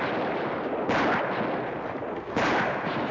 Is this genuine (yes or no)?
yes